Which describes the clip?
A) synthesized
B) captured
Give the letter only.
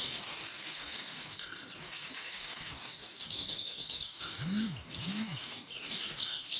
A